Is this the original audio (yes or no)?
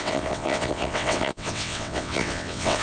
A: no